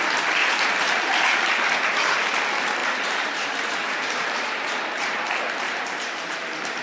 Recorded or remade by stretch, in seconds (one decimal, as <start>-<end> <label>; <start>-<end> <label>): 0.0-0.4 recorded; 0.4-1.5 remade; 1.5-2.8 recorded; 2.8-6.3 remade; 6.3-6.8 recorded